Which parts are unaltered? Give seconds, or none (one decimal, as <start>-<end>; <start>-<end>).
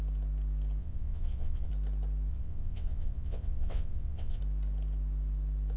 0.0-0.8; 1.7-2.3; 4.4-5.8